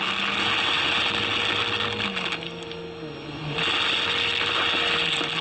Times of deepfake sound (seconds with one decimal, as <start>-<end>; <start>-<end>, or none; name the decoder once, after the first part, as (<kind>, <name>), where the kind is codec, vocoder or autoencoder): none